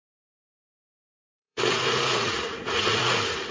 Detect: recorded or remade remade